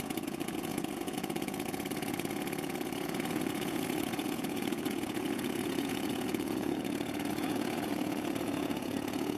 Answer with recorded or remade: remade